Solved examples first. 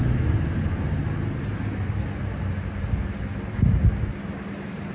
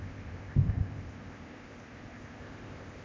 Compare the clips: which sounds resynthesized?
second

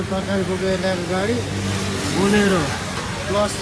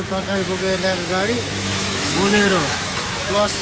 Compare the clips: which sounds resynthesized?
second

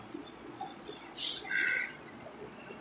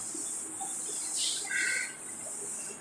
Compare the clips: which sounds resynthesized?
first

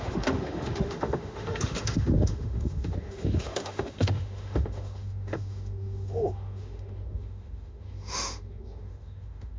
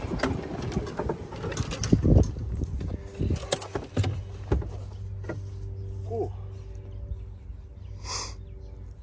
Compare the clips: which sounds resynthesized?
first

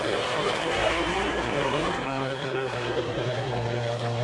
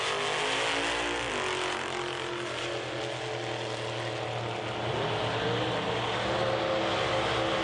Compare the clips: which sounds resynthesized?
first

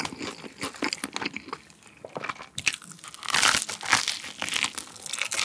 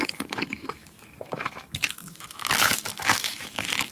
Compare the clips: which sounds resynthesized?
second